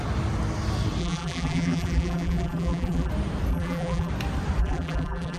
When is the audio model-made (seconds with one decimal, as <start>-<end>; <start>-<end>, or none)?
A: 1.0-3.1; 3.5-4.1; 4.6-5.4

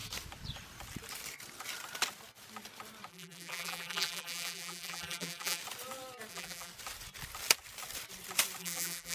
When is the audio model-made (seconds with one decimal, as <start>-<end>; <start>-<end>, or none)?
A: 3.1-5.6; 6.3-6.7; 8.6-9.1

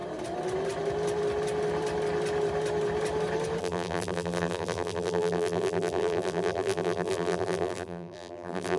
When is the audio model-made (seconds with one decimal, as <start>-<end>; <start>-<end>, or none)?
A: 3.6-8.8

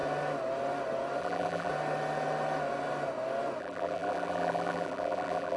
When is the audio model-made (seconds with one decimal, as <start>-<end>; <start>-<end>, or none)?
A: 1.2-1.7; 3.6-5.6

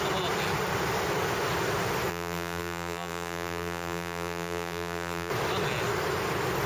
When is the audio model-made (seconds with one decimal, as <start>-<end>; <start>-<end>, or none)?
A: 2.1-5.3

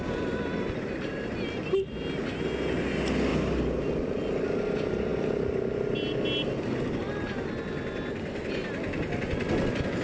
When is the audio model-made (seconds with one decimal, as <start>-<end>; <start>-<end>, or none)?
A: none

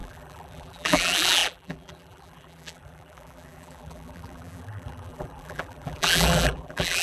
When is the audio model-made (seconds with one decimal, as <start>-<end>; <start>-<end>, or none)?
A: 0.0-7.0